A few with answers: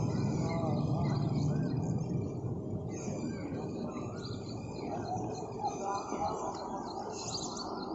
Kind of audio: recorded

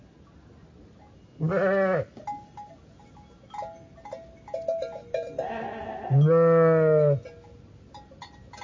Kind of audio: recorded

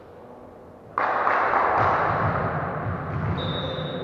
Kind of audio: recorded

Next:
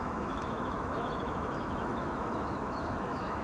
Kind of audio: remade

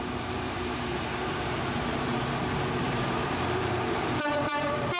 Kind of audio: remade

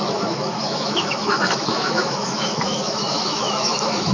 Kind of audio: remade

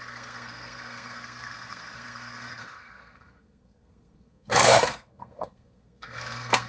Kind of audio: remade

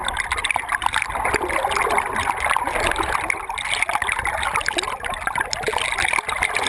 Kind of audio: recorded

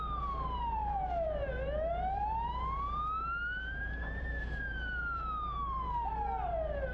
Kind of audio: remade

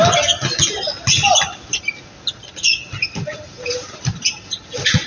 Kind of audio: recorded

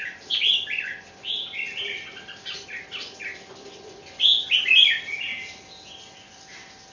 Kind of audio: remade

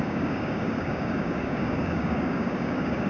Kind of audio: remade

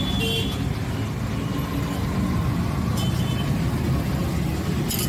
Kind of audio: recorded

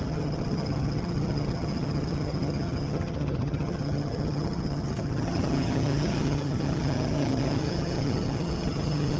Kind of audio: remade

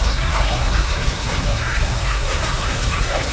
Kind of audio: remade